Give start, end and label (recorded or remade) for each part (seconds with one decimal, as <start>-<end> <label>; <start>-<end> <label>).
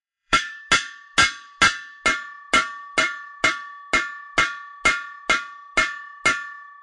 0.0-0.7 remade; 0.7-6.8 recorded